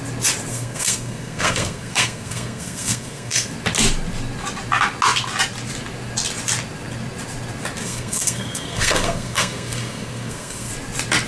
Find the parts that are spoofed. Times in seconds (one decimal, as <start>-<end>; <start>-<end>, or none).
0.5-3.5; 7.8-10.7